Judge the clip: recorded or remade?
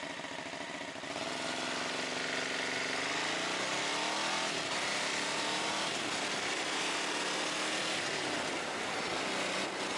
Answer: recorded